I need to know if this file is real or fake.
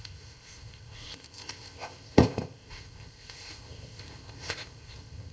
fake